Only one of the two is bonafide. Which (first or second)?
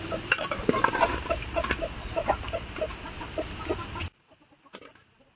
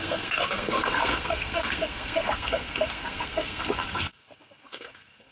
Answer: first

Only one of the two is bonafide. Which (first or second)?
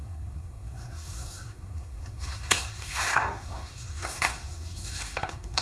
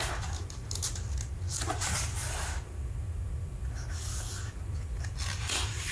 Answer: second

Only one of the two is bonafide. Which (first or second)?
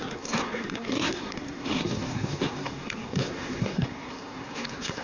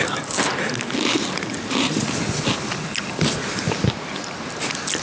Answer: second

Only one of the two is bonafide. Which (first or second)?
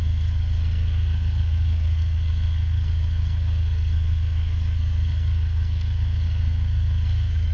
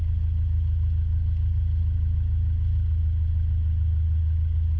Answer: second